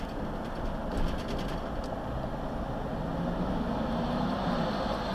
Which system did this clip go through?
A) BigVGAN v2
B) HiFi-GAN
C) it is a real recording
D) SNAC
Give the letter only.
C